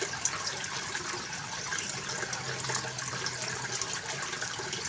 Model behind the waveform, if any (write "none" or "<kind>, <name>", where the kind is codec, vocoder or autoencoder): none